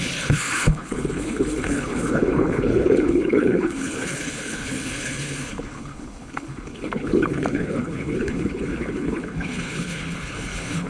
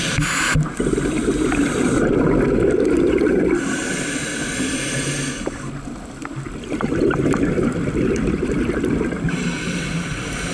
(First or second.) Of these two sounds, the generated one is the first